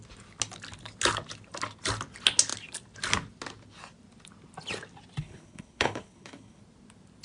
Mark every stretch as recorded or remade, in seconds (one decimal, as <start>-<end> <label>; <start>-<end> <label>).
0.0-5.2 recorded; 5.2-6.6 remade; 6.6-7.2 recorded